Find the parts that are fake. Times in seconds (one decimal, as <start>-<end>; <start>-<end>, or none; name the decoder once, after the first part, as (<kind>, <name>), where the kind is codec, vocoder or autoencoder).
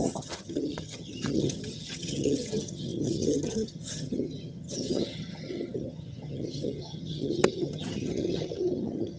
0.0-9.2 (vocoder, HiFi-GAN)